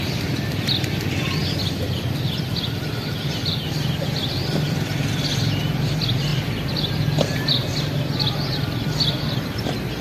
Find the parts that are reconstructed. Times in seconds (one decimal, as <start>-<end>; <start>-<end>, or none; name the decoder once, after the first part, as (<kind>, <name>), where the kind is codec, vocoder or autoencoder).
0.0-6.3 (vocoder, BigVGAN v2); 8.2-10.0